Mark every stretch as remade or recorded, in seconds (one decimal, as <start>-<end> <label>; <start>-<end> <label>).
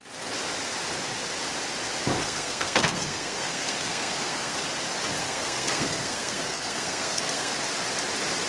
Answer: 0.0-2.2 recorded; 2.2-4.6 remade; 4.6-5.2 recorded; 5.2-7.5 remade; 7.5-8.5 recorded